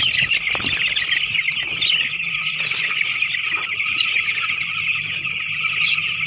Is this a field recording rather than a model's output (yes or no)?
yes